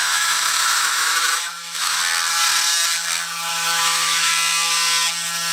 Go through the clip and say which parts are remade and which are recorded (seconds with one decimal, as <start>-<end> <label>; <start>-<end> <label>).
0.0-2.0 remade; 2.0-3.5 recorded; 3.5-4.3 remade; 4.3-5.5 recorded